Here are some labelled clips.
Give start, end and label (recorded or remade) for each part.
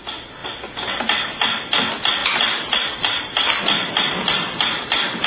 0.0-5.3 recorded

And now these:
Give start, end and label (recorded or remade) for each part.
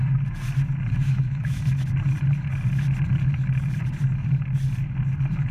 0.0-1.0 recorded; 1.0-1.6 remade; 1.6-5.5 recorded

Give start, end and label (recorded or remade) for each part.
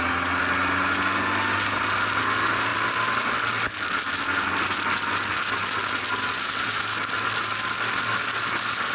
0.0-8.9 recorded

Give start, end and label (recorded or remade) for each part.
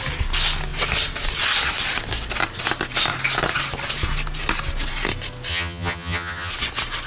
0.0-5.5 recorded; 5.5-6.5 remade; 6.5-7.1 recorded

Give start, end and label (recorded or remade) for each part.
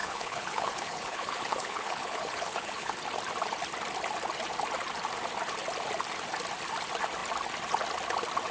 0.0-3.0 remade; 3.0-8.5 recorded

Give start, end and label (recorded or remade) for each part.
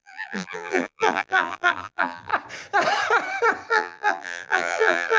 0.0-2.3 remade; 2.3-3.7 recorded; 3.7-5.2 remade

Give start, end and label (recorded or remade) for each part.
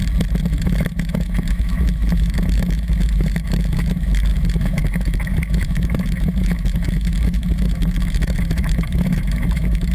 0.0-0.5 recorded; 0.5-9.9 remade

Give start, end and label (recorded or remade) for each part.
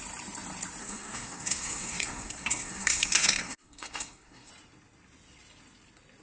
0.0-0.8 recorded; 0.8-4.5 remade; 4.5-6.2 recorded